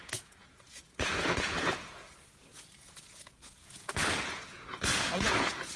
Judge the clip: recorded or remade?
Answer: remade